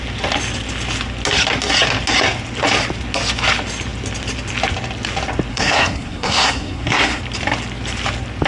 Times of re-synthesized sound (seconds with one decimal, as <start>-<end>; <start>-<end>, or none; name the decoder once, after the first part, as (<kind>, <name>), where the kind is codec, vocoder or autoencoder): 5.5-7.2 (codec, SNAC)

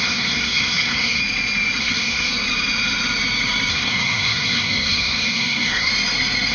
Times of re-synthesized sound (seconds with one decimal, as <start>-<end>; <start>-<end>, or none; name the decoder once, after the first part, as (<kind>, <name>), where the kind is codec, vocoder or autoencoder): 0.0-1.2 (codec, SNAC); 1.8-2.3; 3.7-5.9

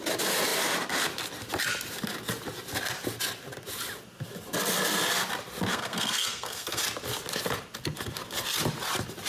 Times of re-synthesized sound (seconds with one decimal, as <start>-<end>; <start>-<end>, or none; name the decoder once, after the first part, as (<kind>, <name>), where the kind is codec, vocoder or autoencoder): 5.7-6.8 (codec, SNAC)

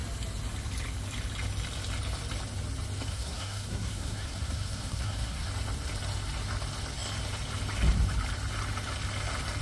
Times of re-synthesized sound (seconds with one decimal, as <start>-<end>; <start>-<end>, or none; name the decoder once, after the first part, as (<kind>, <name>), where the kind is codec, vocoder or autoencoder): 3.1-5.5 (codec, SNAC)

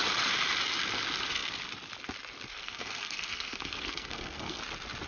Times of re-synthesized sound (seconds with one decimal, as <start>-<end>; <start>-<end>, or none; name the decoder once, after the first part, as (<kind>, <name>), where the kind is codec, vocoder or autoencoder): 2.5-4.6 (codec, SNAC)

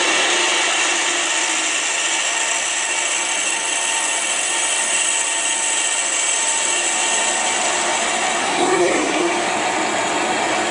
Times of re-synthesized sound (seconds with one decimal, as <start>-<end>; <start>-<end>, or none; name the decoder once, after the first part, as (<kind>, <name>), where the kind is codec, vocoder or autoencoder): 8.4-9.3 (codec, SNAC)